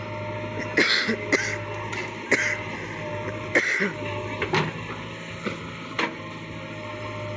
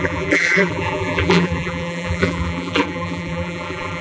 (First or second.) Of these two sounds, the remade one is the second